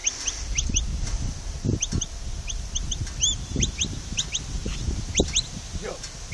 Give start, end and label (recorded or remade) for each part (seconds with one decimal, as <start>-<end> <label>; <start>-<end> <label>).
0.0-6.3 recorded